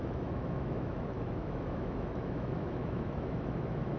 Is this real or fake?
fake